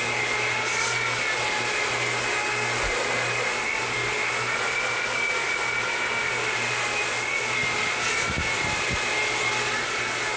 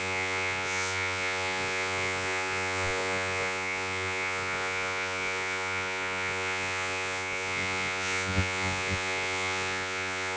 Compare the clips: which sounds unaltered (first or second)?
first